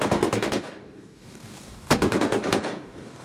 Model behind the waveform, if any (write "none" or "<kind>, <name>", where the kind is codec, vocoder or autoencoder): codec, DAC